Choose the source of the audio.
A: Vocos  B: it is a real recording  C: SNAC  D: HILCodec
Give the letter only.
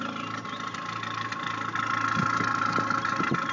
B